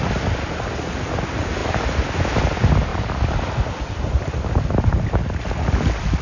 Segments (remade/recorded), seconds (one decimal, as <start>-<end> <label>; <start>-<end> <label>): 0.0-1.1 remade; 1.1-1.6 recorded; 1.6-2.4 remade; 2.4-2.9 recorded; 2.9-6.2 remade